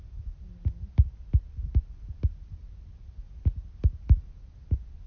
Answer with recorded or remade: recorded